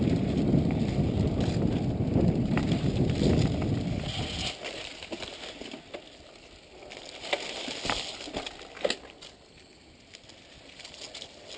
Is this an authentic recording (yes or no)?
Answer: yes